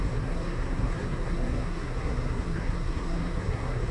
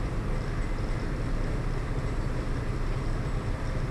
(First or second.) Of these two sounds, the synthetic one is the first